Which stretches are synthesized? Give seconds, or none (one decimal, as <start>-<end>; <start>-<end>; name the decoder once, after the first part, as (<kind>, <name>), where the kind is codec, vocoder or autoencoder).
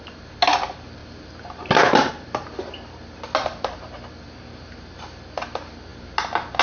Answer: none